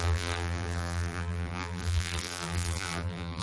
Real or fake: fake